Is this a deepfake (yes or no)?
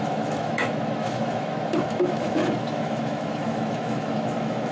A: yes